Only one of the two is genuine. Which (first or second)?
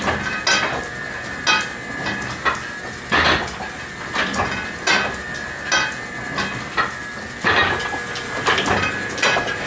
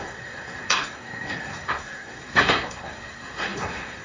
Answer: first